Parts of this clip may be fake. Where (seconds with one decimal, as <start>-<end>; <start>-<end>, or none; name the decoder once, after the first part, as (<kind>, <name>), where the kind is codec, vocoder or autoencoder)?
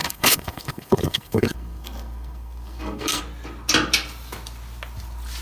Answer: 0.0-3.2 (codec, SNAC)